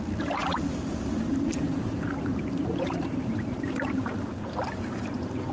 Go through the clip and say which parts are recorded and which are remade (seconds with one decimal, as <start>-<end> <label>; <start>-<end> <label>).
0.0-0.4 recorded; 0.4-3.7 remade; 3.7-5.5 recorded

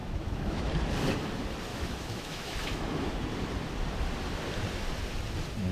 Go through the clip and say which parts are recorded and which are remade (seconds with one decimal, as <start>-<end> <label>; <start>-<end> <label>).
0.0-0.7 remade; 0.7-1.7 recorded; 1.7-3.1 remade; 3.1-5.7 recorded

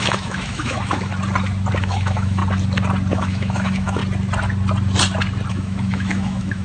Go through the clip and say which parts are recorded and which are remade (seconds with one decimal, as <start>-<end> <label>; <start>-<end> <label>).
0.0-1.1 remade; 1.1-1.8 recorded; 1.8-2.4 remade; 2.4-3.1 recorded; 3.1-4.0 remade; 4.0-5.5 recorded; 5.5-6.6 remade

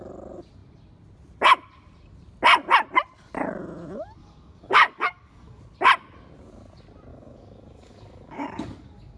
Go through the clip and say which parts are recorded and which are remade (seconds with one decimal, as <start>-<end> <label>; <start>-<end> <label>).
0.0-4.2 recorded; 4.2-5.6 remade; 5.6-7.1 recorded; 7.1-9.2 remade

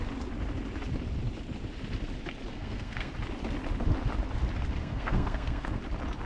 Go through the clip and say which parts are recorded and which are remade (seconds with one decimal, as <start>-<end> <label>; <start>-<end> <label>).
0.0-2.5 recorded; 2.5-3.1 remade; 3.1-4.8 recorded; 4.8-5.8 remade; 5.8-6.3 recorded

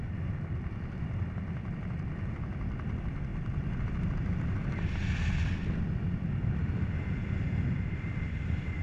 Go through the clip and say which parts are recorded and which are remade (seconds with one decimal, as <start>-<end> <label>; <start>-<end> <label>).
0.0-8.8 recorded